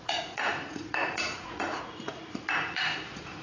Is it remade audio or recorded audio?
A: remade